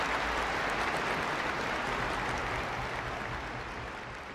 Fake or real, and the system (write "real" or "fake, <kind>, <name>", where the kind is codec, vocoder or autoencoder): real